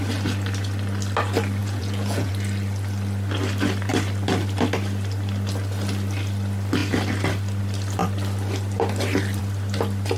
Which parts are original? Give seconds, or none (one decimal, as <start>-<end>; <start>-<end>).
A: 0.0-1.6; 2.3-10.2